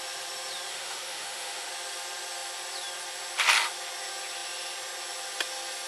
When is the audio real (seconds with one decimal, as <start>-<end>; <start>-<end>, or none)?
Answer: 0.0-0.7; 1.7-5.9